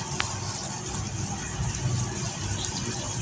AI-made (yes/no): no